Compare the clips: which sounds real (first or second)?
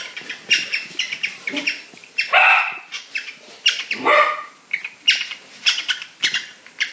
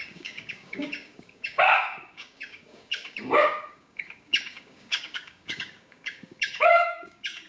first